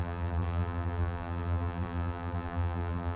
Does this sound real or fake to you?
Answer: fake